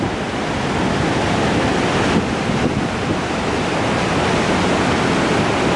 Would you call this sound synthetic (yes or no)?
no